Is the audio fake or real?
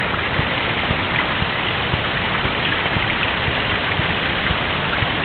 real